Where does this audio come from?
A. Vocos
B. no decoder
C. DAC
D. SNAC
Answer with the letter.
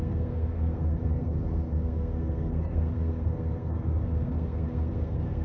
D